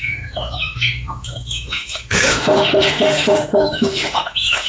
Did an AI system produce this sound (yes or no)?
yes